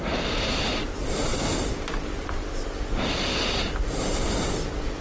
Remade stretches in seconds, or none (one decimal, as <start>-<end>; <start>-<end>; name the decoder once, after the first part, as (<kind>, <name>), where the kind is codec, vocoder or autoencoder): none